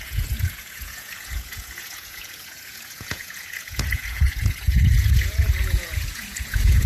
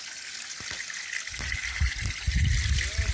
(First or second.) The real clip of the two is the second